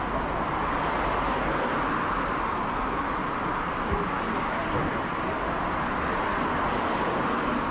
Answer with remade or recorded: recorded